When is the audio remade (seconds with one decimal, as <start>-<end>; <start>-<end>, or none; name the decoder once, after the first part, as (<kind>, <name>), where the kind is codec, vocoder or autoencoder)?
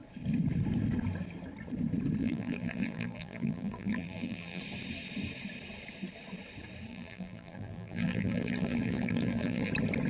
2.2-4.6 (vocoder, BigVGAN v2); 6.9-9.7